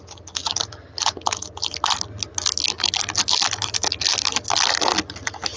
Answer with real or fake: real